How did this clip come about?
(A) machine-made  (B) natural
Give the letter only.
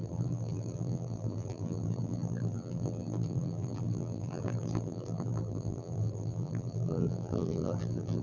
A